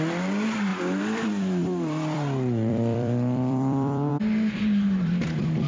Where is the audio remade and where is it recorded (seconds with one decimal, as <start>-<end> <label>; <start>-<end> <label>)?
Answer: 0.0-0.7 recorded; 0.7-4.1 remade; 4.1-5.7 recorded